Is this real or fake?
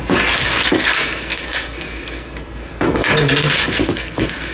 fake